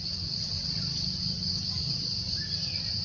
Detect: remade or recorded recorded